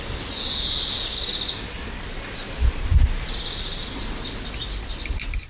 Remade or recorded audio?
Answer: recorded